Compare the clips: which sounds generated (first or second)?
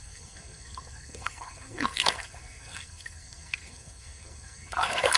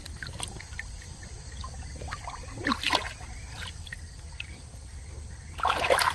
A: first